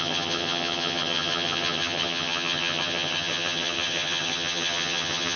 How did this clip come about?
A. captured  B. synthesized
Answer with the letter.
B